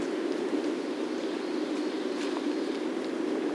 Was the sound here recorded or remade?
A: recorded